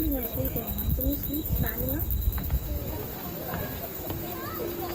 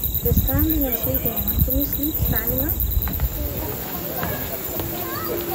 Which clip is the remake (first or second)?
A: first